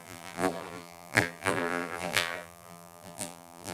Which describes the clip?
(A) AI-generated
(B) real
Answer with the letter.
A